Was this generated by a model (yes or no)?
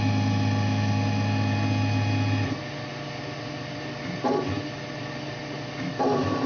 no